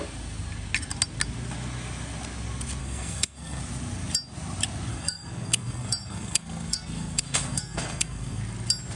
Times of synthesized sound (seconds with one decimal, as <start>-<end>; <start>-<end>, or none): 2.8-3.6; 4.9-8.4